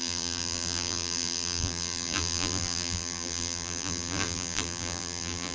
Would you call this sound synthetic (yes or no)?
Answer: yes